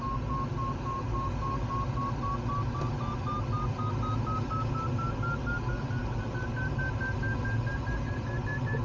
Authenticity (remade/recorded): recorded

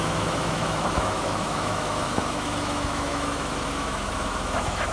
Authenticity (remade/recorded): remade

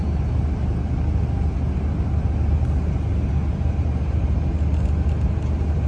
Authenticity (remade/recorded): recorded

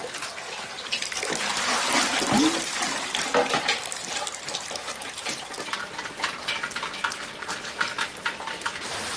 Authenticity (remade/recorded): recorded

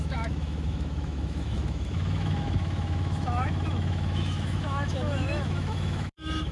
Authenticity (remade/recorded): remade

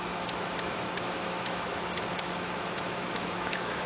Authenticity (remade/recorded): remade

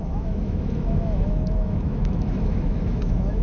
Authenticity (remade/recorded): remade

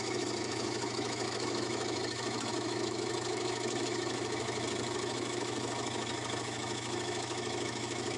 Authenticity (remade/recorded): remade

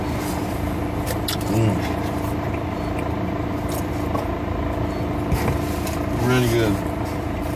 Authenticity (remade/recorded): recorded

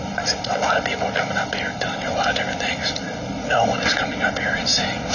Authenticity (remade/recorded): recorded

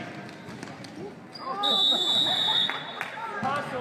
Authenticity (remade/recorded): recorded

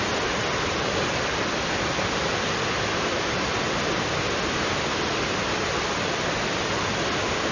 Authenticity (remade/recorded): recorded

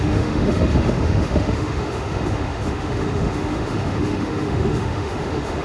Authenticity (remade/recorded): remade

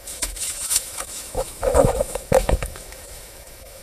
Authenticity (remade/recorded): remade